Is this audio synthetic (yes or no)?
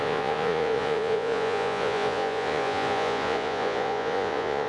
yes